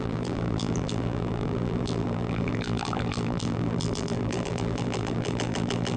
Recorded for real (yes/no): no